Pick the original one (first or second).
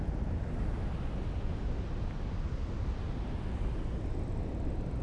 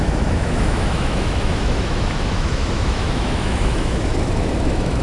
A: first